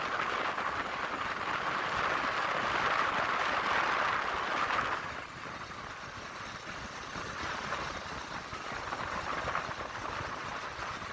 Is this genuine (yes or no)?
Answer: yes